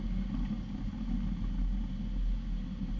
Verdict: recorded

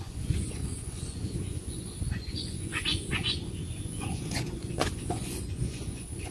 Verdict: remade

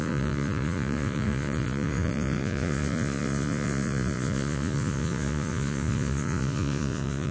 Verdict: remade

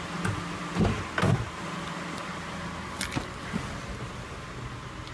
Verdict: recorded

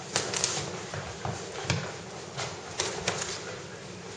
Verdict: recorded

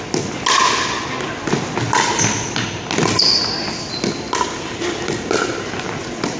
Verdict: recorded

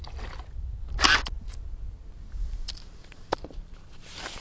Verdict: recorded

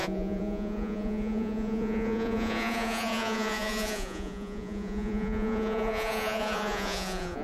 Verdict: remade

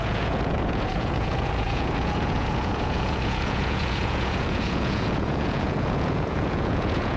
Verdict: remade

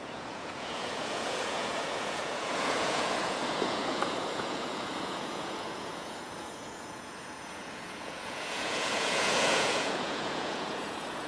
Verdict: remade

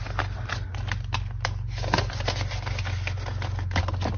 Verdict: recorded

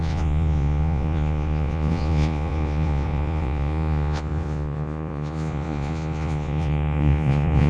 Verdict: remade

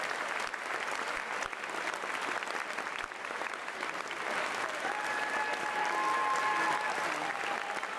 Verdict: recorded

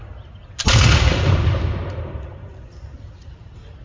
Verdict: recorded